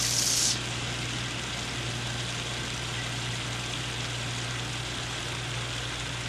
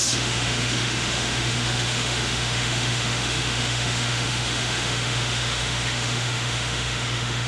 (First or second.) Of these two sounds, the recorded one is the first